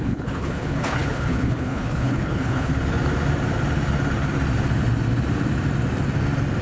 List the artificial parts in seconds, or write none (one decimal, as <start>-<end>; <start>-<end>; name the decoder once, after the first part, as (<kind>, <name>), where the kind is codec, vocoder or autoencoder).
0.0-2.7 (codec, HILCodec)